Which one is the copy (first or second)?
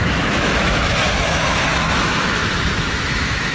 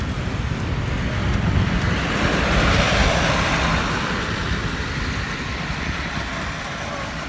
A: first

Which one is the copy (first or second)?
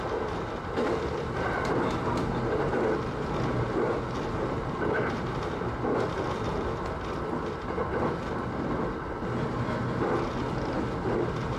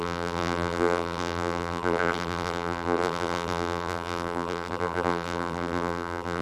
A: second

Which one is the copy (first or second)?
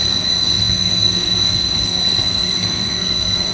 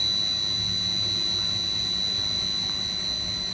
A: first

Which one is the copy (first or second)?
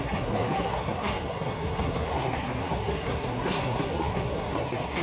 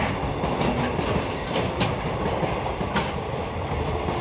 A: first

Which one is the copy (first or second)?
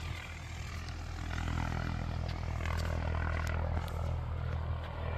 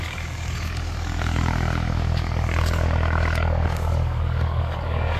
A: second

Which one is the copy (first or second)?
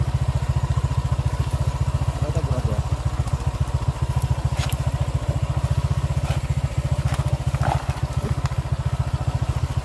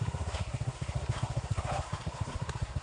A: second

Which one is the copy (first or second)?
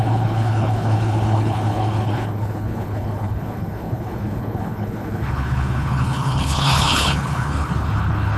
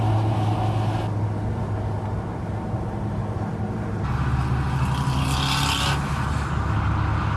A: first